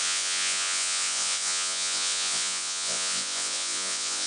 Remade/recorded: remade